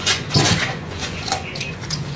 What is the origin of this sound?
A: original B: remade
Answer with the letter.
B